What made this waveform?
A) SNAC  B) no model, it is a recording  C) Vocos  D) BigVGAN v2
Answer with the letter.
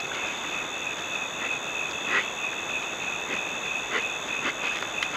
B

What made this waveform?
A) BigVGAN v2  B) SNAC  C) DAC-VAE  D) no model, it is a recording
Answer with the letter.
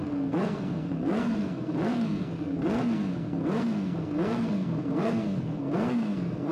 B